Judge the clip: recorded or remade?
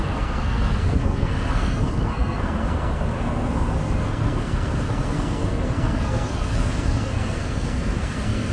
remade